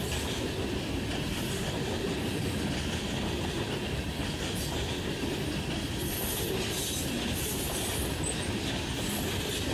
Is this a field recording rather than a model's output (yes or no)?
yes